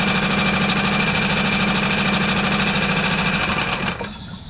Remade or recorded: recorded